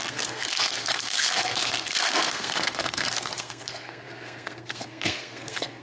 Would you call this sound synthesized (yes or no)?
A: yes